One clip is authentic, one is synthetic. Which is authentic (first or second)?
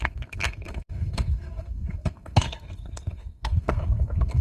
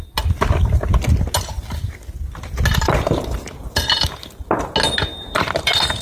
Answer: second